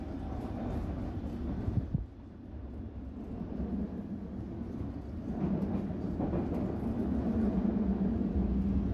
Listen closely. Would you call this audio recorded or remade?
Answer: recorded